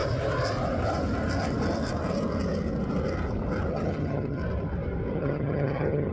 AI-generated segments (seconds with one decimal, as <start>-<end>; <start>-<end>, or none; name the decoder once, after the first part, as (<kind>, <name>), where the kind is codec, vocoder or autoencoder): 3.7-4.4 (vocoder, HiFi-GAN); 5.1-6.1